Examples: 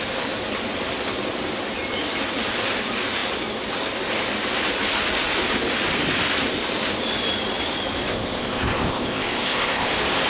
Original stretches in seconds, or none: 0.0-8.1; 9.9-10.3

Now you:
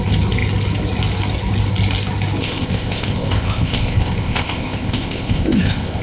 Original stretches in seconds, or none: 0.0-2.4

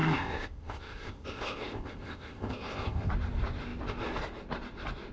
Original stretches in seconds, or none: 3.1-5.1